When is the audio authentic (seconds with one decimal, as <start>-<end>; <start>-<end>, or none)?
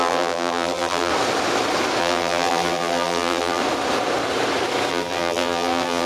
1.1-2.0; 3.6-4.9